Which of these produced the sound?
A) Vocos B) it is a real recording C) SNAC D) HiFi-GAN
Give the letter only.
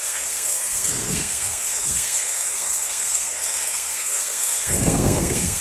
C